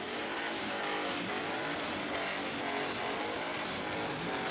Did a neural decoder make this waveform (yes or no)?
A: no